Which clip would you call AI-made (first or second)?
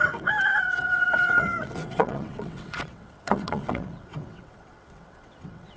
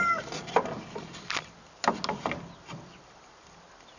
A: first